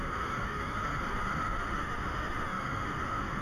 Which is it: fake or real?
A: fake